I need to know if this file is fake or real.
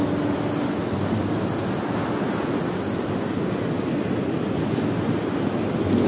real